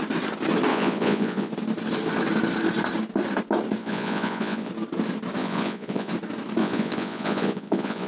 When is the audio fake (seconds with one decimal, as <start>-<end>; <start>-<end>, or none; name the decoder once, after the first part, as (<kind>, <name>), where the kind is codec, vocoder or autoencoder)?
0.7-1.5 (vocoder, Vocos); 3.8-4.7; 5.4-6.1; 6.6-8.1